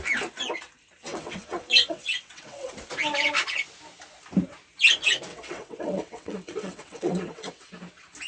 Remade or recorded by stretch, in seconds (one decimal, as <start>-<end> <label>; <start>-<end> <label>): 0.0-1.1 recorded; 1.1-2.7 remade; 2.7-5.3 recorded; 5.3-7.7 remade; 7.7-8.3 recorded